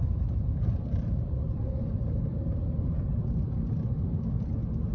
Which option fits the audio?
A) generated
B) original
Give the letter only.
B